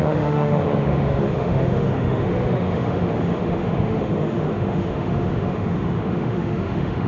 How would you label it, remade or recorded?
remade